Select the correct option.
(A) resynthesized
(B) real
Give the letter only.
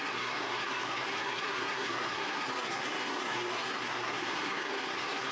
A